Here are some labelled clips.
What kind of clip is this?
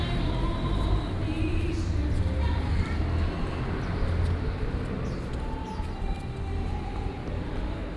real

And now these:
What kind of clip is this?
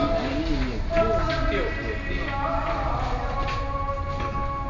real